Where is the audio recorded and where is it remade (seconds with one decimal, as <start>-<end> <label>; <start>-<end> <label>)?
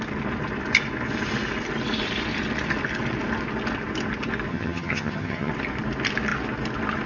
0.0-4.5 recorded; 4.5-5.5 remade; 5.5-7.1 recorded